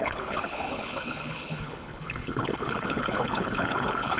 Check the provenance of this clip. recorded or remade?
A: remade